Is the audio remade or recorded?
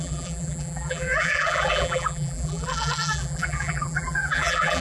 remade